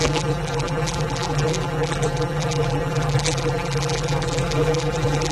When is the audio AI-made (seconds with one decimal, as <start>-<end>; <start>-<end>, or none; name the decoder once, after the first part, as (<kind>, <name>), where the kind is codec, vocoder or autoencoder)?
0.0-5.3 (vocoder, BigVGAN v2)